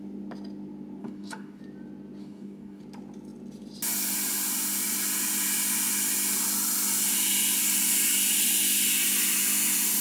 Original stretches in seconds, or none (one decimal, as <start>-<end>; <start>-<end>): 0.0-1.0; 1.6-2.2; 2.8-10.0